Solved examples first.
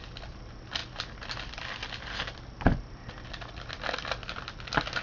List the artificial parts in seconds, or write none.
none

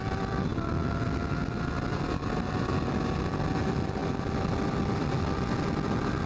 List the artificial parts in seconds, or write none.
none

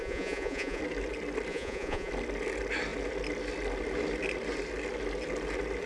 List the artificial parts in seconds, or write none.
0.0-0.8; 1.5-2.1

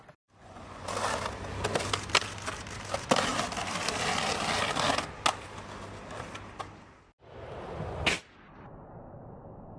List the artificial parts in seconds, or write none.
0.4-0.9